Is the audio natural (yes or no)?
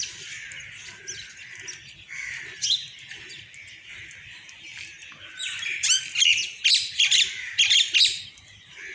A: yes